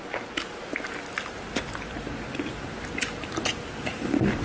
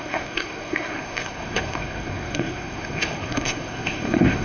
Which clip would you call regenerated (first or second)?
second